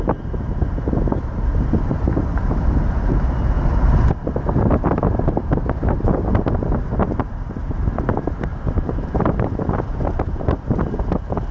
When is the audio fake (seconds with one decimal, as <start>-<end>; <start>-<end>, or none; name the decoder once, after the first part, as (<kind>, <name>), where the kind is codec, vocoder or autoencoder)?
8.5-9.5 (vocoder, BigVGAN v2)